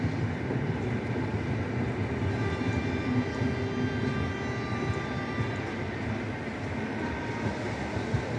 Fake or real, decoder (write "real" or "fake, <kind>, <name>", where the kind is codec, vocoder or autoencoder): real